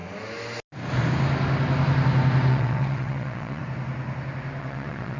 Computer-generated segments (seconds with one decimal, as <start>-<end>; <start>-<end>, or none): 2.5-3.6; 4.6-5.2